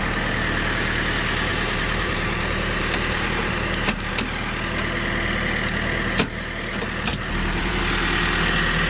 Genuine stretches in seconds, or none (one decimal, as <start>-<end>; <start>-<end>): 0.0-1.5; 4.1-7.1; 7.8-8.9